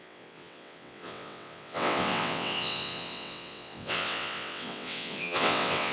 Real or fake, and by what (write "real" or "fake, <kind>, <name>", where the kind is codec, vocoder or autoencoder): fake, vocoder, WaveNeXt